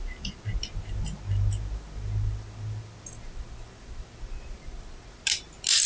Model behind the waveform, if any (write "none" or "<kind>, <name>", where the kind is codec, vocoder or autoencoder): none